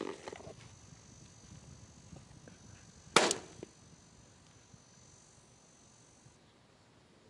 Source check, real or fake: real